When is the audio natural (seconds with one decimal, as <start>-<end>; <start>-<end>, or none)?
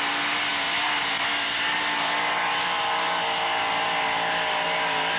0.0-5.2